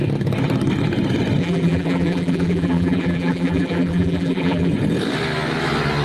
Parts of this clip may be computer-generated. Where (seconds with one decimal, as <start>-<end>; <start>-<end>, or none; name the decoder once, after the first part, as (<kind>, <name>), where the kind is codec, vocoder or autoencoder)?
1.4-4.7 (vocoder, BigVGAN v2)